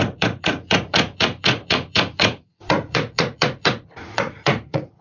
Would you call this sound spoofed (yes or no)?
yes